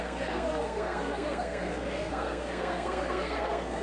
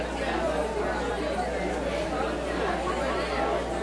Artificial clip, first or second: first